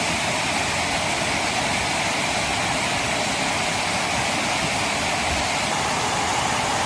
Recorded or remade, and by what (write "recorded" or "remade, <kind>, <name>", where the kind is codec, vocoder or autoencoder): recorded